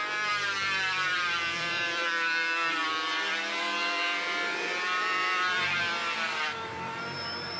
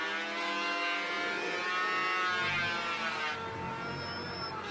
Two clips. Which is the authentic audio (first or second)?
second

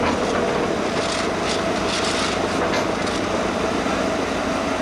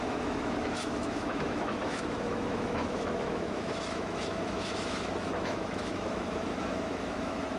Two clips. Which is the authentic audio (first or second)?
first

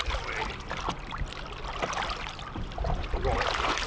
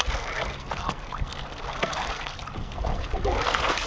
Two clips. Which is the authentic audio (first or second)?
first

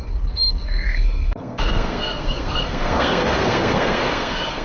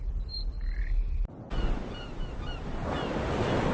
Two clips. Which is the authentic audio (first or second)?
second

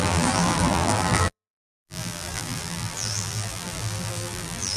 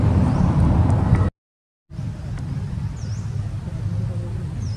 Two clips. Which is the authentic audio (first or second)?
second